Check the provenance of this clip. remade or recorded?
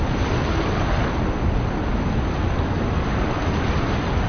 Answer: recorded